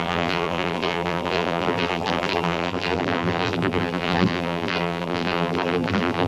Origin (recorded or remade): remade